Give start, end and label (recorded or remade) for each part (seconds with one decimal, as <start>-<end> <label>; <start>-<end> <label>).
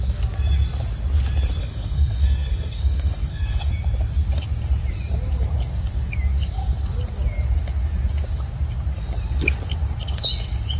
0.0-1.6 recorded; 1.6-3.7 remade; 3.7-10.8 recorded